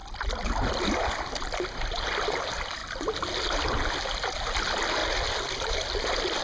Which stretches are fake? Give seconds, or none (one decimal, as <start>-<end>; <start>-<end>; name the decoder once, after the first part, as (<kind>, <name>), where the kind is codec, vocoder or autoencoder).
none